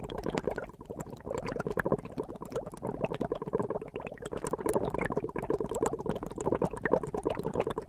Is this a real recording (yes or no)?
no